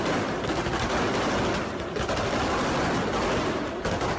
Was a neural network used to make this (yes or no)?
no